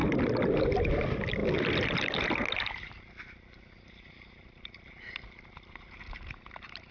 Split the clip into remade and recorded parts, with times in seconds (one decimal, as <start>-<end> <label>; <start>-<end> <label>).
0.0-6.9 recorded